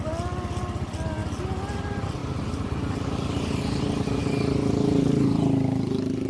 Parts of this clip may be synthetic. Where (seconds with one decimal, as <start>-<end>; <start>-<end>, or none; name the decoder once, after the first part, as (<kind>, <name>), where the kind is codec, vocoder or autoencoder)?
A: 2.2-4.2 (vocoder, BigVGAN v2)